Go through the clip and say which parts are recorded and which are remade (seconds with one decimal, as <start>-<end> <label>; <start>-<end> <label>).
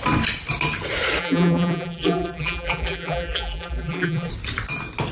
0.0-1.2 recorded; 1.2-4.3 remade; 4.3-5.1 recorded